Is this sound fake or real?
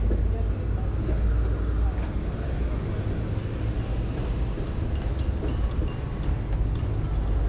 real